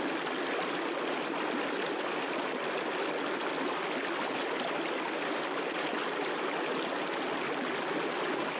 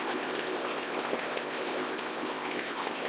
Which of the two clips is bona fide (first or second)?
first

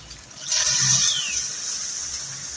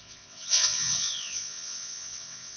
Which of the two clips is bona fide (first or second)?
first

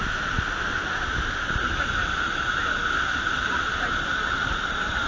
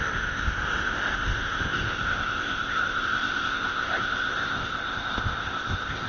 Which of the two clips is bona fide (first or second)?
first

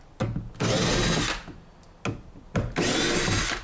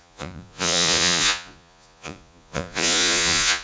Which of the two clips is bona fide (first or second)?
first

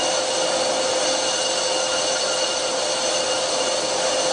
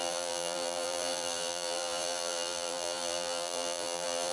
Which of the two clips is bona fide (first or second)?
first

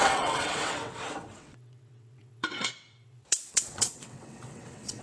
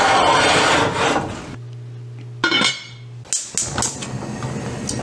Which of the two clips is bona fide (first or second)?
second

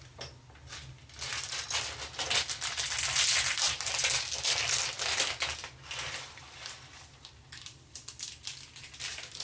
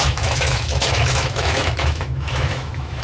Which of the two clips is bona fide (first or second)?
first